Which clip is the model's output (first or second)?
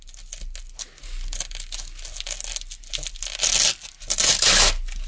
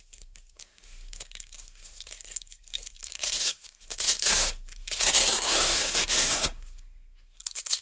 second